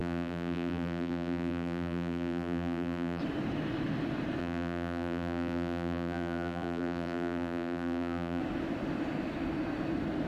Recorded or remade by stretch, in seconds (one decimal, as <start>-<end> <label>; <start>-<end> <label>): 0.0-3.2 remade; 3.2-4.4 recorded; 4.4-8.4 remade; 8.4-10.3 recorded